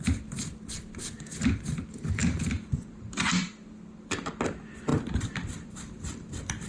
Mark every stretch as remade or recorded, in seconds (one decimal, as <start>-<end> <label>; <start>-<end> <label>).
0.0-2.2 recorded; 2.2-3.5 remade; 3.5-4.9 recorded; 4.9-6.7 remade